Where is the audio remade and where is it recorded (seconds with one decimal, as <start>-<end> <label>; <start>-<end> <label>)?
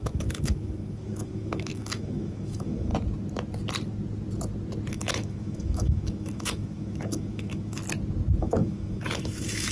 0.0-2.9 remade; 2.9-4.9 recorded; 4.9-7.8 remade; 7.8-8.4 recorded; 8.4-9.7 remade